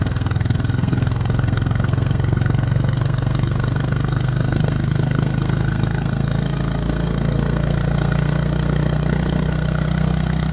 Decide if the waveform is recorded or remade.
remade